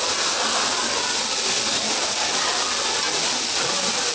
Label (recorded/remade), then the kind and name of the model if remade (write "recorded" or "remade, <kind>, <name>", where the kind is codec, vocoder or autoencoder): recorded